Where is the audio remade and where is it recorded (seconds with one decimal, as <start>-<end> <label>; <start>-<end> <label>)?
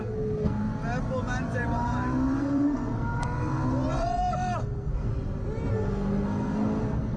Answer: 0.0-0.6 remade; 0.6-2.4 recorded; 2.4-3.6 remade; 3.6-4.6 recorded; 4.6-5.1 remade; 5.1-5.7 recorded; 5.7-7.2 remade